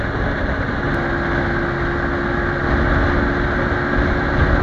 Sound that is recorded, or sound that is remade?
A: recorded